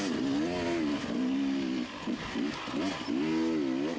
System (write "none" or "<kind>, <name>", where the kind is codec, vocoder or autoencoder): none